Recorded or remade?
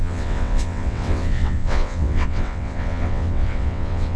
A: remade